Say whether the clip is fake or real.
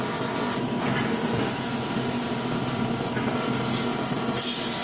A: real